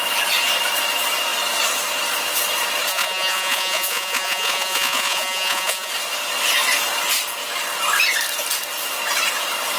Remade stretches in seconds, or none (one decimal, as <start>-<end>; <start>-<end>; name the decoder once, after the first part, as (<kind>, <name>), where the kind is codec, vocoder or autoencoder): 2.9-5.9 (vocoder, Vocos)